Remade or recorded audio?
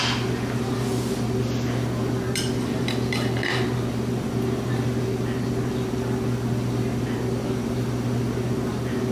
recorded